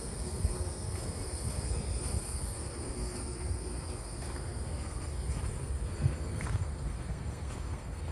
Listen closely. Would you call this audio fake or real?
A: fake